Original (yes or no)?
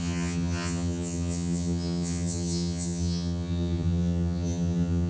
no